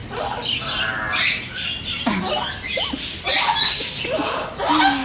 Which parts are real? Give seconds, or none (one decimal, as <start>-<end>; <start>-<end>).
0.0-5.0